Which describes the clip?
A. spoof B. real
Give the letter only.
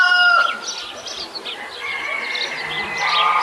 B